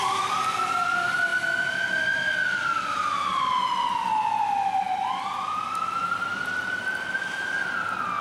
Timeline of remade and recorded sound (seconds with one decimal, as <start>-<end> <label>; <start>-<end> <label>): 0.0-1.3 remade; 1.3-5.2 recorded; 5.2-8.2 remade